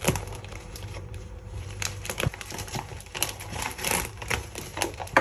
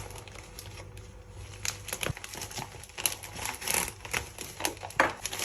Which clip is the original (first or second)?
second